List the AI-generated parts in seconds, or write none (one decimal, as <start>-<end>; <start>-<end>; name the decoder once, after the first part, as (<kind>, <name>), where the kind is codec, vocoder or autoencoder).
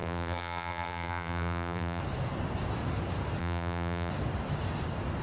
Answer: 0.0-2.0 (vocoder, BigVGAN v2); 3.4-4.1